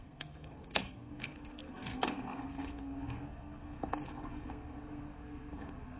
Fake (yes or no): yes